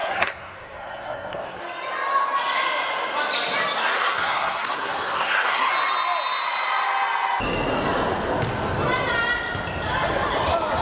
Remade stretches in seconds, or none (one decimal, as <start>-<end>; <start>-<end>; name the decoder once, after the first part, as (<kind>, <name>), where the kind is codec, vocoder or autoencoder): 0.0-1.6 (codec, SNAC); 3.8-5.7